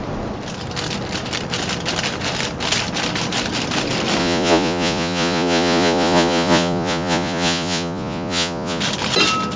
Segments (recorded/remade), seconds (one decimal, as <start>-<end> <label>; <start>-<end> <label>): 0.0-4.2 recorded; 4.2-8.8 remade; 8.8-9.6 recorded